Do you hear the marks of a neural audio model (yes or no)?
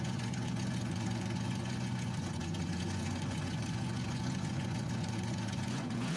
yes